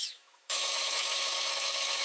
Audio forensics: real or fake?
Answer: fake